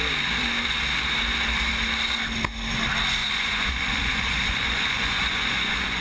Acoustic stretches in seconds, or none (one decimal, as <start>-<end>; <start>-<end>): 0.0-3.2